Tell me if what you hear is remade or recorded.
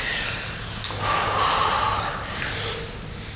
recorded